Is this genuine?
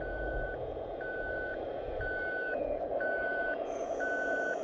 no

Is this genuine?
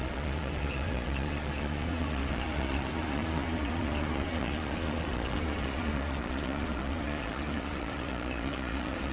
no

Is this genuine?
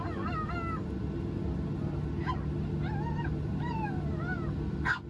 yes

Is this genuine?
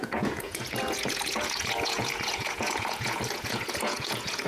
no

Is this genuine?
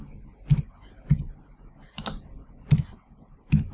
yes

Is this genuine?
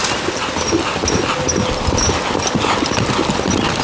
yes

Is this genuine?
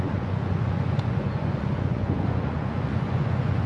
no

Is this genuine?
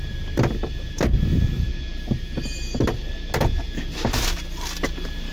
yes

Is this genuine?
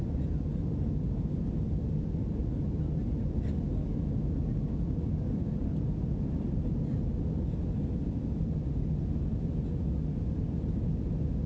yes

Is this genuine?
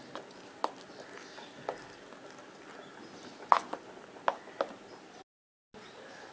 yes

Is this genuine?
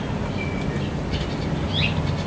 yes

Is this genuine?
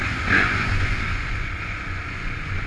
no